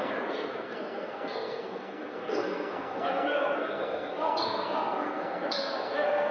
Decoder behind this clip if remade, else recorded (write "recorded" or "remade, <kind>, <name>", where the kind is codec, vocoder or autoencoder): remade, codec, SNAC